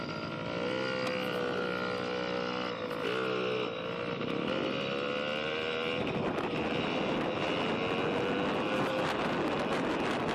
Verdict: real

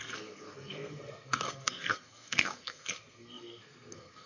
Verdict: fake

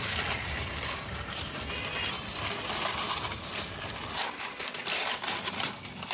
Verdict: real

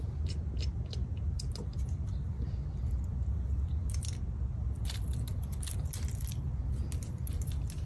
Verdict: real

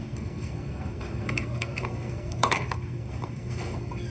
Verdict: fake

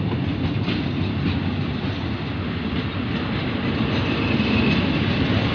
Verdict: real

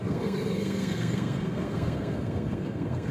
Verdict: fake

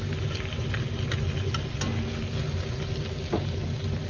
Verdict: real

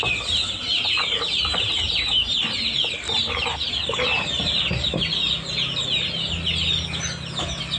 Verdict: real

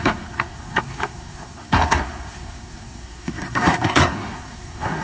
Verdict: fake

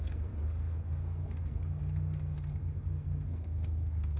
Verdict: fake